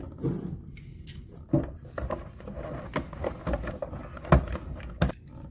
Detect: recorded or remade recorded